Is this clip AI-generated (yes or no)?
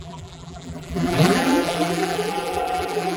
yes